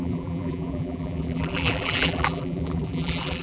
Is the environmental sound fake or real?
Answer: fake